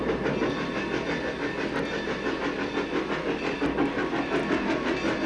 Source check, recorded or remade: recorded